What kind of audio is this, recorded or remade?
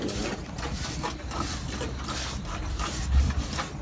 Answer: recorded